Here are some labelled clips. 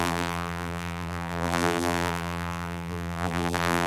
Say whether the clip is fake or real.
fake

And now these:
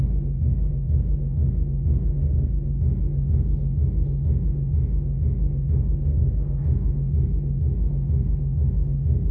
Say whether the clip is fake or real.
fake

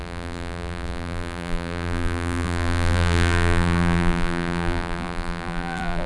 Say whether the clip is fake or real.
fake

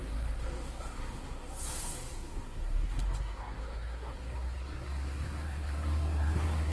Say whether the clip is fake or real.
fake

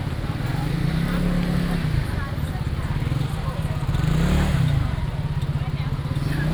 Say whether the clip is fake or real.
real